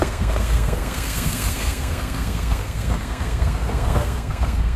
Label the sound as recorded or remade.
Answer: remade